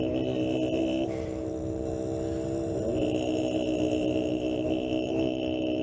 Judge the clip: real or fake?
real